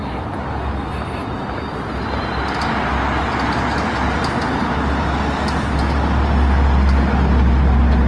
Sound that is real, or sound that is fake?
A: real